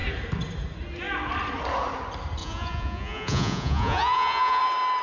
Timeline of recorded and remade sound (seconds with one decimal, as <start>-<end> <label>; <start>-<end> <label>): 0.0-2.4 recorded; 2.4-4.6 remade; 4.6-5.0 recorded